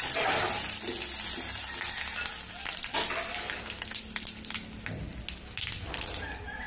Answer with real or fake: real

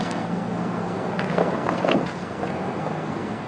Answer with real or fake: fake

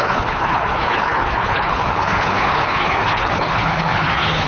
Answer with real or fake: fake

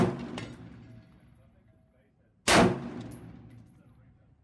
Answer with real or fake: real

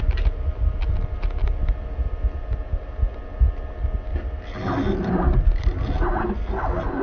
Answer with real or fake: real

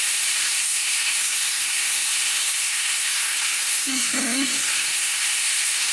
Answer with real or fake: fake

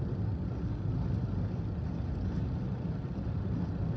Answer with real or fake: real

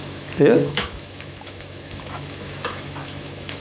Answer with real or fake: fake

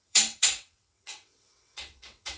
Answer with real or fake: fake